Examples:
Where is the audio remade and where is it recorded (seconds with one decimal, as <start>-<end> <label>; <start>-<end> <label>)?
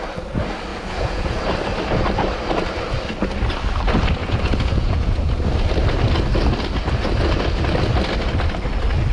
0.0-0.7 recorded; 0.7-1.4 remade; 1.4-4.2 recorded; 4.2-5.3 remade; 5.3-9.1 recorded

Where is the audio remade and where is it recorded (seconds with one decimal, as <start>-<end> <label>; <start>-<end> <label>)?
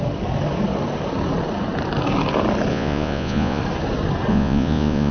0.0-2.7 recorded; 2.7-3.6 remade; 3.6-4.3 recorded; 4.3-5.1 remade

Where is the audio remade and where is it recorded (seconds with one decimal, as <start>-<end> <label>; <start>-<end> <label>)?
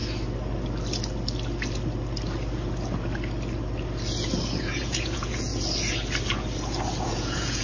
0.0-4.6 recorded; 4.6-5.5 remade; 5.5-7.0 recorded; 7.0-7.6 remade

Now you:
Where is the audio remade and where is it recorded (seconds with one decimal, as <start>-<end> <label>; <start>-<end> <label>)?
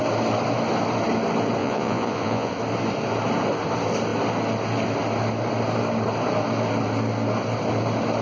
0.0-1.6 recorded; 1.6-2.5 remade; 2.5-8.2 recorded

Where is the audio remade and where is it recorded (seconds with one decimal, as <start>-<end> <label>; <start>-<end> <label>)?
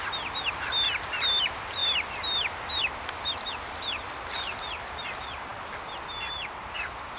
0.0-7.2 recorded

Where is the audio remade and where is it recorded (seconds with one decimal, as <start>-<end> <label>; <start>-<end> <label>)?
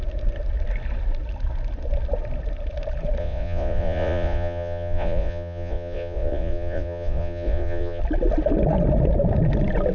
0.0-3.2 recorded; 3.2-8.0 remade; 8.0-9.9 recorded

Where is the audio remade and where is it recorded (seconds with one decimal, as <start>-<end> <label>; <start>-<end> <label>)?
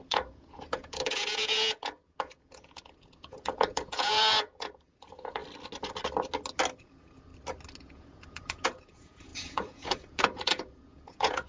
0.0-5.4 remade; 5.4-6.8 recorded; 6.8-7.3 remade; 7.3-7.8 recorded; 7.8-11.5 remade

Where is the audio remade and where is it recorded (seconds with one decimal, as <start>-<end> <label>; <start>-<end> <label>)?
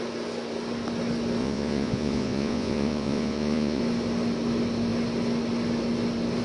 0.0-1.4 recorded; 1.4-3.8 remade; 3.8-6.4 recorded